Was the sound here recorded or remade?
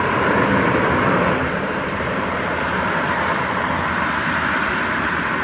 remade